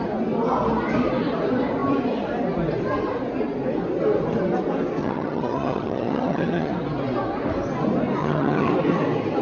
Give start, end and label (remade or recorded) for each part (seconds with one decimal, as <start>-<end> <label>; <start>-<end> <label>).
0.0-5.0 recorded; 5.0-6.7 remade; 6.7-8.2 recorded; 8.2-8.7 remade; 8.7-9.4 recorded